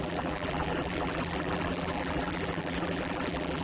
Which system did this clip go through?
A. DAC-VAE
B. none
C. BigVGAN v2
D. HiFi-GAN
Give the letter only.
C